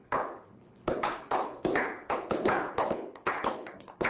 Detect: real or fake fake